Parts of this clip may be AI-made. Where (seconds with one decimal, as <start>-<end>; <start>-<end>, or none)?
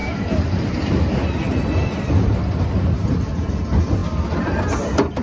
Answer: none